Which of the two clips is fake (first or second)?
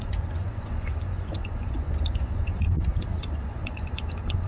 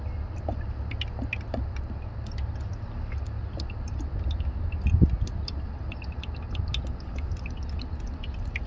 first